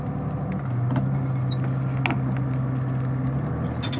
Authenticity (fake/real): real